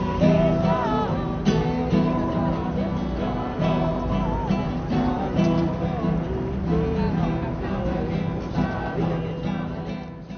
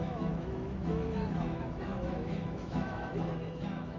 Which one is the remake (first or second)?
second